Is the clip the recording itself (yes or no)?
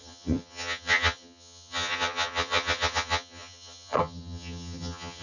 no